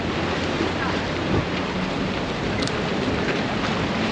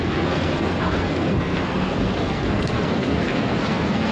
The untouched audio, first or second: first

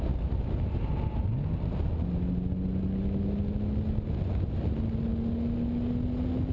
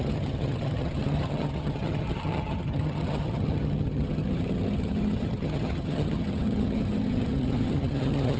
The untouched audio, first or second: first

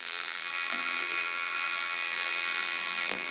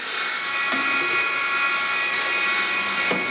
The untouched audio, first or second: second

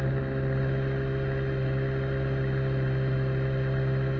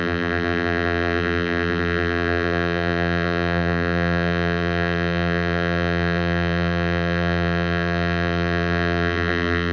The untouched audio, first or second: first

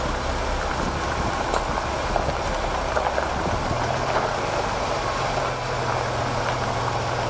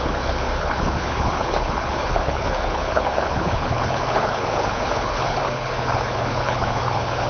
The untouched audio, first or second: first